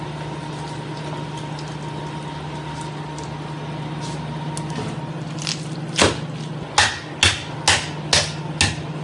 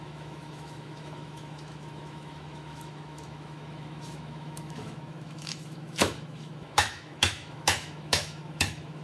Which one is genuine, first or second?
first